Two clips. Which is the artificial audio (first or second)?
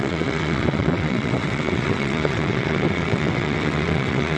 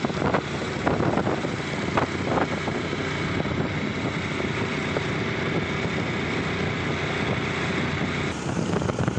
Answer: first